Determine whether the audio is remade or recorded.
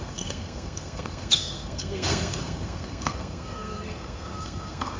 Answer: remade